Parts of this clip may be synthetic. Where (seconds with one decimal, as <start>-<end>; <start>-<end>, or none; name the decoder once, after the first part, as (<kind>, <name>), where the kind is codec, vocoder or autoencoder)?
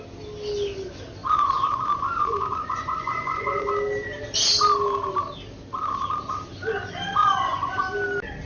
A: 1.2-3.7 (vocoder, Vocos); 7.2-7.8